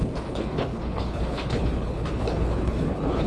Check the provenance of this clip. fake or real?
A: fake